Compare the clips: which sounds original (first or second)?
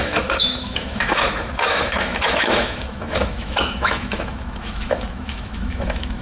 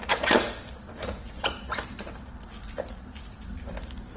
second